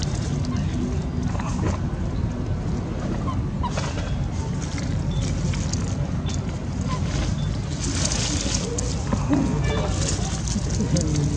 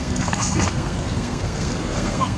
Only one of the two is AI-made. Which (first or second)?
second